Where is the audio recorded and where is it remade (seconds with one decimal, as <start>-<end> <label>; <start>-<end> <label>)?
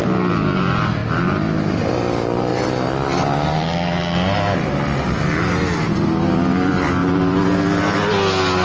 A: 0.0-8.6 recorded